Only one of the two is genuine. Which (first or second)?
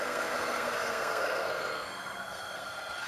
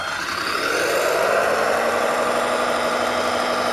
second